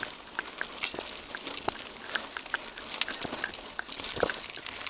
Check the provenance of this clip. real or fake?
real